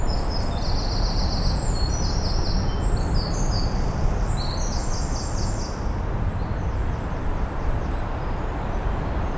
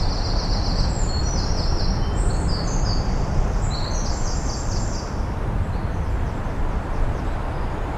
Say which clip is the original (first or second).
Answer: first